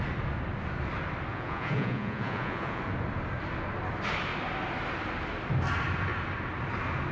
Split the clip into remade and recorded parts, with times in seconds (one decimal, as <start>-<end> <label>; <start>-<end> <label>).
0.0-1.3 recorded; 1.3-2.8 remade; 2.8-7.1 recorded